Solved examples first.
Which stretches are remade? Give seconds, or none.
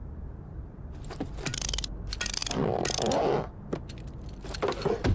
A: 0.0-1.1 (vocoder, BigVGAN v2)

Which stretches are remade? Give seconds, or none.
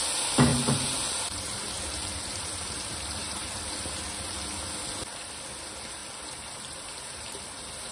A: 0.5-3.7 (vocoder, BigVGAN v2); 6.0-7.9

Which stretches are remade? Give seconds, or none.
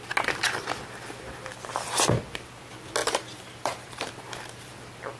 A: 3.0-4.1 (vocoder, BigVGAN v2)